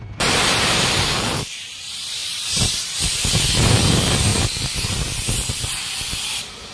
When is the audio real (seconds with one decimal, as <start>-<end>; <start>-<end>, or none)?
none